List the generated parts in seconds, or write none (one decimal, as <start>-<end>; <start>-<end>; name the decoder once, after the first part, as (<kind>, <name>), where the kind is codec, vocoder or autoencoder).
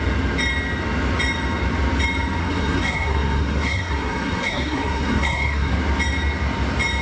2.4-5.7 (codec, SNAC)